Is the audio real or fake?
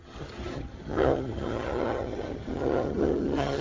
fake